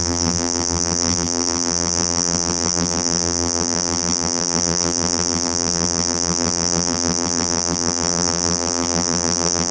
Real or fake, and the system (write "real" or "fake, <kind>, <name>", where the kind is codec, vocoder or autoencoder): fake, vocoder, BigVGAN v2